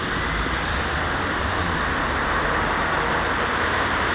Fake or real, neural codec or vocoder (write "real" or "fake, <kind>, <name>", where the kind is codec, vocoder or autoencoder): real